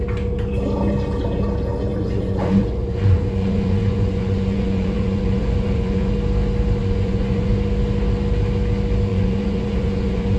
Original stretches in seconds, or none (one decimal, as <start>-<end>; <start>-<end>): 0.0-1.9; 6.1-6.8; 7.5-9.1

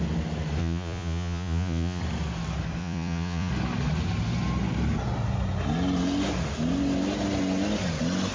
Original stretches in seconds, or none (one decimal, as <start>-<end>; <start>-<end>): 0.0-0.6; 2.0-2.8; 3.5-8.3

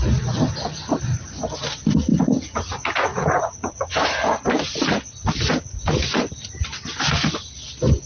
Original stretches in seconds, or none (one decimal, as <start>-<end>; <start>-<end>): 0.0-2.1; 4.0-8.1